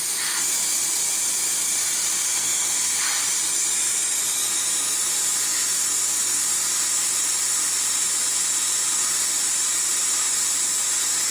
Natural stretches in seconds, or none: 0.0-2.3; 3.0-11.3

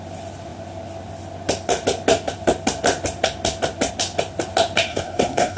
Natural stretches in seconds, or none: 0.0-4.9

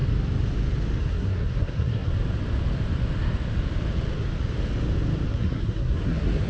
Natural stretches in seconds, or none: 0.0-1.0; 2.1-5.3

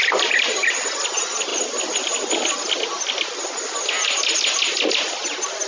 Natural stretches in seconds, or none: 0.0-5.7

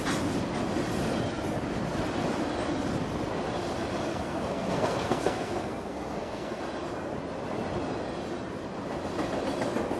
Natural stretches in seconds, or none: 0.0-4.1; 6.6-10.0

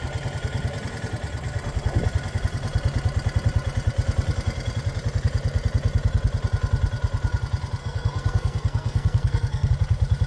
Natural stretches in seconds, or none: 0.0-7.8; 9.7-10.3